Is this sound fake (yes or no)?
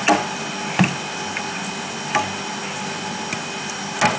no